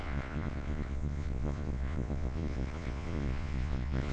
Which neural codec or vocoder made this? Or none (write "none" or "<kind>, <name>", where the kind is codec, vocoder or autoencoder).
vocoder, Vocos